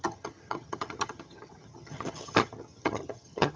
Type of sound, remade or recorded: remade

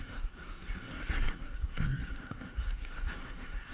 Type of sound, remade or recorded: remade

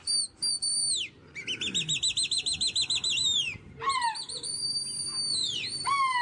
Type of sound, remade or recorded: recorded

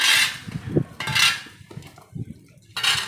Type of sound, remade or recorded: recorded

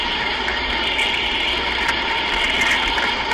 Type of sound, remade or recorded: recorded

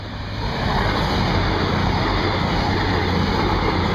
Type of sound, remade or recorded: recorded